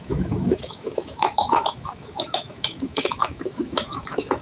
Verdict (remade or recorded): remade